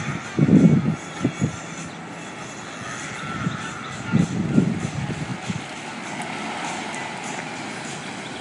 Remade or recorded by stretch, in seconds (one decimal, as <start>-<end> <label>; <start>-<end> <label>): 0.0-8.4 recorded